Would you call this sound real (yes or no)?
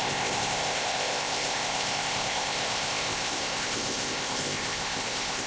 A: no